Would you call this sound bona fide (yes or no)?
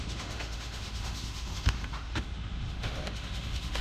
no